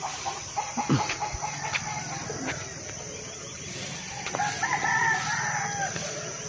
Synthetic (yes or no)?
no